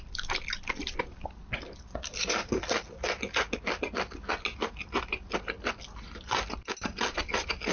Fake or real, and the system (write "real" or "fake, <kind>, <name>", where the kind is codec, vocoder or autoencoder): real